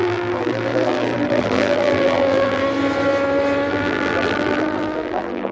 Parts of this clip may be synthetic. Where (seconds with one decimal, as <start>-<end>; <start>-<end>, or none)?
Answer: 0.0-2.6; 3.7-5.5